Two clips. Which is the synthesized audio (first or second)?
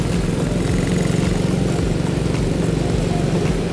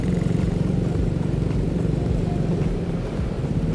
second